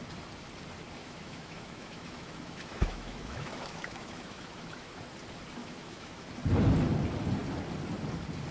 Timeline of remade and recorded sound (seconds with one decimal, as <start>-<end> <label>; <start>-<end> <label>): 0.0-1.0 recorded; 1.0-5.0 remade; 5.0-5.6 recorded; 5.6-6.3 remade; 6.3-8.5 recorded